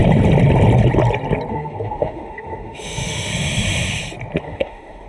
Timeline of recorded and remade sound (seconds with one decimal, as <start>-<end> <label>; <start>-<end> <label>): 0.0-1.5 recorded; 1.5-3.3 remade; 3.3-4.4 recorded; 4.4-5.1 remade